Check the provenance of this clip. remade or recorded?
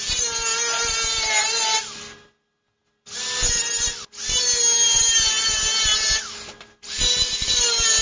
recorded